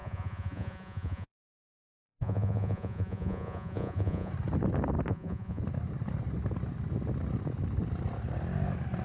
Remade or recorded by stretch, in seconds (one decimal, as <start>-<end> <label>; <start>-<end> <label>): 0.0-4.3 remade; 4.3-5.1 recorded; 5.1-5.6 remade; 5.6-9.0 recorded